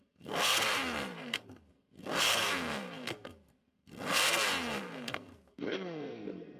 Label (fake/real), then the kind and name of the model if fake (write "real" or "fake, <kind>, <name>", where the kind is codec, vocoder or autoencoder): fake, codec, SNAC